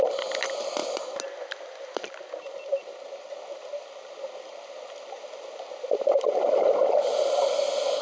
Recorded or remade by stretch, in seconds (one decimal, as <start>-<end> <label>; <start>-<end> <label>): 0.0-8.0 recorded